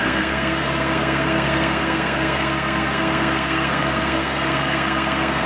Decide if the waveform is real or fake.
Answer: fake